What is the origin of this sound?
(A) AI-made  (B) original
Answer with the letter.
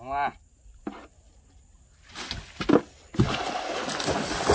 B